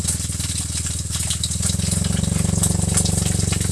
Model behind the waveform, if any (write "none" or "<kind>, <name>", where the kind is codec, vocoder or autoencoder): none